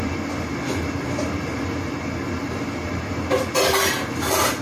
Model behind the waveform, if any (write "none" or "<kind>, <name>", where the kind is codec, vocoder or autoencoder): none